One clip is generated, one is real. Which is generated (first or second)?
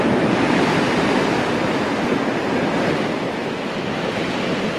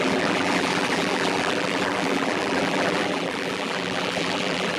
second